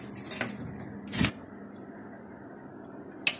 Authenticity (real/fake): real